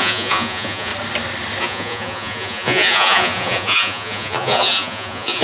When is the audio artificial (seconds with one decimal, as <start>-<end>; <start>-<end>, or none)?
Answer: 0.0-0.9; 1.6-5.4